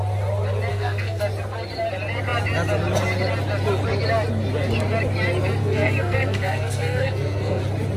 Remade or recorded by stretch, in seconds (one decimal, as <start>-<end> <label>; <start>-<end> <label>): 0.0-0.7 recorded; 0.7-1.2 remade; 1.2-5.6 recorded; 5.6-7.6 remade; 7.6-8.0 recorded